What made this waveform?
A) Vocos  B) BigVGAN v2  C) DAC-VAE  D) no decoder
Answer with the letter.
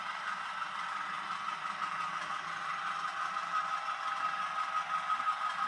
D